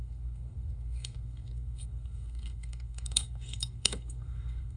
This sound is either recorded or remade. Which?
remade